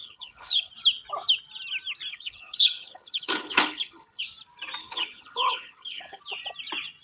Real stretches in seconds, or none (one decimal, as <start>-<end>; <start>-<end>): 0.7-2.1; 4.2-4.8; 6.2-7.0